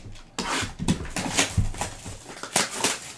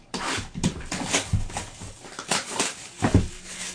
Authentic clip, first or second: first